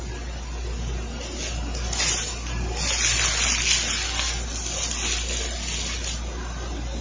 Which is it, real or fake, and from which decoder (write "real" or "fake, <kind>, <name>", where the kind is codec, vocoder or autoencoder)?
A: real